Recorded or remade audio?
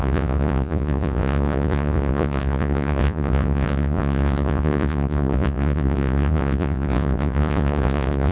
remade